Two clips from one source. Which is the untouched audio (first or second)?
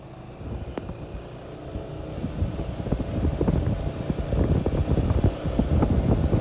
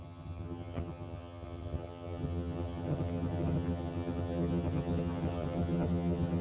first